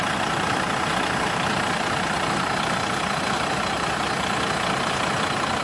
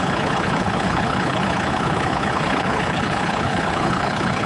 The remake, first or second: second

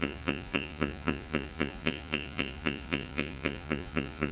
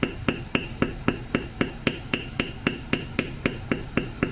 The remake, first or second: first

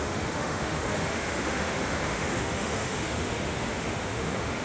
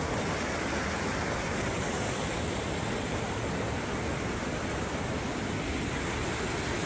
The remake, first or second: first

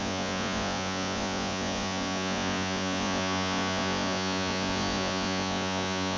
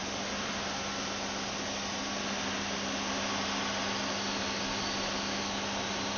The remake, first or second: first